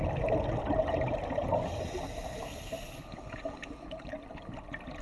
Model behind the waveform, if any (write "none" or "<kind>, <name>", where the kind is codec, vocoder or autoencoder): none